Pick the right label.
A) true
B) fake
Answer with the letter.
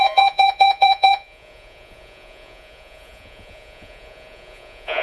B